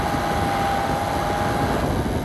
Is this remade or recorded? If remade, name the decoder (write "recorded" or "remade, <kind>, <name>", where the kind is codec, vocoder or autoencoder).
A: recorded